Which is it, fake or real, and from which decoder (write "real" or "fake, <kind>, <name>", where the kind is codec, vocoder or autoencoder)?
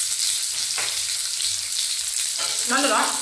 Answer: real